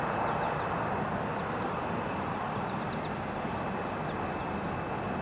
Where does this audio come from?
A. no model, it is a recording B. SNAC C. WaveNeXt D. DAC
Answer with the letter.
A